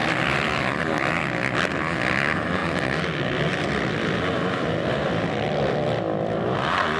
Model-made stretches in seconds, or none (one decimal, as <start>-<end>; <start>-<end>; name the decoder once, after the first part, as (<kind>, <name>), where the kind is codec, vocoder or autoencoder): 0.0-0.8 (vocoder, BigVGAN v2); 2.6-7.0